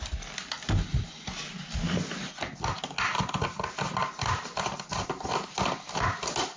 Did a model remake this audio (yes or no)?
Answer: no